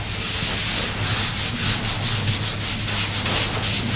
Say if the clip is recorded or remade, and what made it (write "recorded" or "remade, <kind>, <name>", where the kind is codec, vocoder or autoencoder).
recorded